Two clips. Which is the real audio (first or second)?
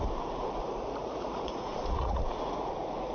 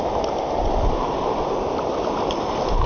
second